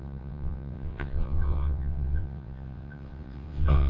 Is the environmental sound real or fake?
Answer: fake